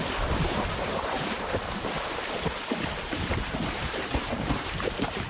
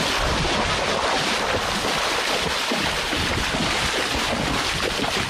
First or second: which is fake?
first